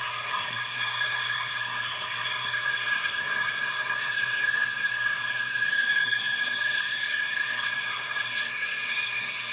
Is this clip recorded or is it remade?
remade